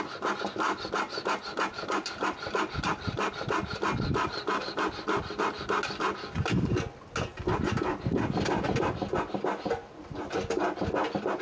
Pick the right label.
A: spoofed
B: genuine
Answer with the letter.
B